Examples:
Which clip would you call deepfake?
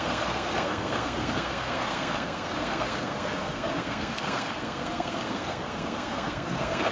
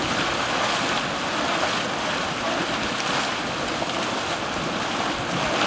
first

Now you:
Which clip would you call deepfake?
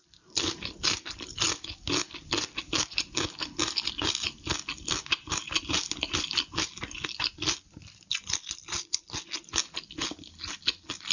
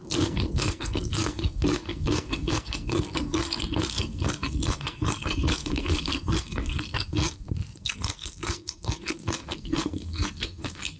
second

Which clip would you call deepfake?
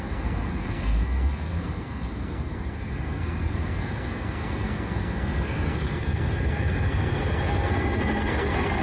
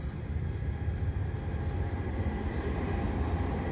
first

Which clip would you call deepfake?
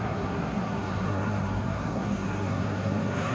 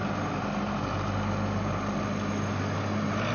first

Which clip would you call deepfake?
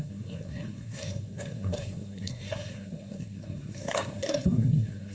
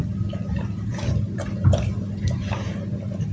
first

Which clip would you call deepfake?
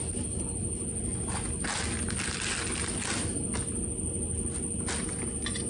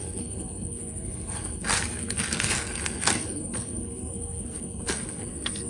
second